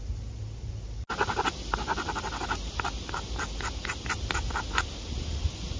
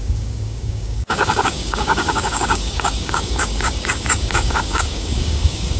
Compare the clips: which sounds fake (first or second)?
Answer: second